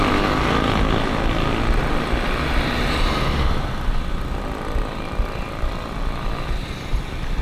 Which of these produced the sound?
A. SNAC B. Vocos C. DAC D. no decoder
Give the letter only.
D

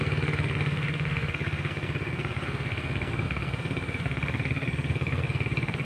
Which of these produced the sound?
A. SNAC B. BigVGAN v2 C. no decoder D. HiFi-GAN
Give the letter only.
A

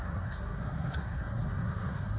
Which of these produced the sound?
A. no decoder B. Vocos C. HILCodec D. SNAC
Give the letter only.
D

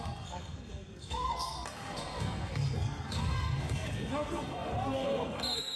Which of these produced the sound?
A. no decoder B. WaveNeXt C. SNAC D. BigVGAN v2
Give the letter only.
C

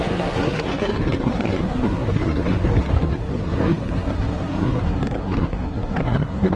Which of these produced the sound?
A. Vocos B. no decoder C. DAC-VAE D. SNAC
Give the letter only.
D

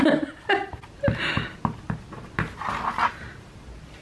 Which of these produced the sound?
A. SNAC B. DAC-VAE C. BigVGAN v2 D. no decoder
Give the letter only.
D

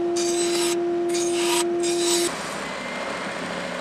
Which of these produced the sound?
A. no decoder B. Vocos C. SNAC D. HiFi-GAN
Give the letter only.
A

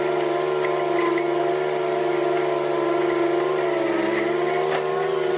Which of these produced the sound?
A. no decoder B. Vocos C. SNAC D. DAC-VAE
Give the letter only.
A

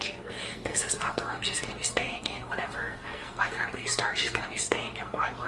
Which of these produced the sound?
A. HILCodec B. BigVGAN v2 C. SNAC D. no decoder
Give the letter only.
C